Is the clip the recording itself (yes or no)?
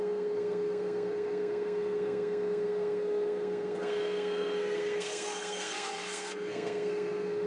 no